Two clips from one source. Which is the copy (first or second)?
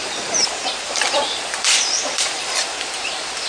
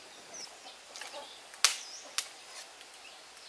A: first